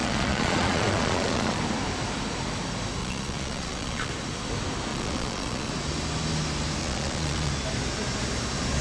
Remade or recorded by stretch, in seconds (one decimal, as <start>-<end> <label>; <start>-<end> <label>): 0.0-1.6 remade; 1.6-3.0 recorded; 3.0-4.1 remade; 4.1-4.9 recorded; 4.9-5.7 remade; 5.7-6.8 recorded; 6.8-7.5 remade; 7.5-8.8 recorded